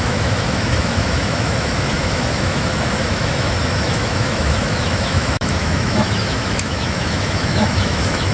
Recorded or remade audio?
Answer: remade